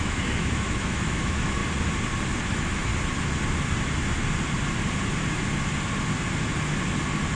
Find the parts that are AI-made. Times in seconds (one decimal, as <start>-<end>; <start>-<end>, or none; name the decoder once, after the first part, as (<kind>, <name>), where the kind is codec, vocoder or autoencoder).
0.0-1.6 (autoencoder, DAC-VAE); 2.4-2.9